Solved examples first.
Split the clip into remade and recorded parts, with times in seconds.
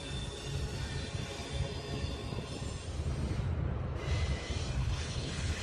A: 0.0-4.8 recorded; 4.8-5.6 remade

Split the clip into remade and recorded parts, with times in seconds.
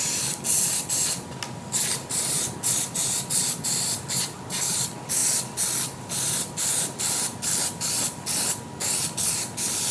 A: 0.0-9.9 recorded